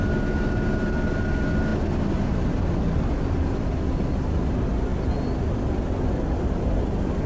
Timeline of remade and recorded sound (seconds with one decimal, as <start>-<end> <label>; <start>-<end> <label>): 0.0-7.3 recorded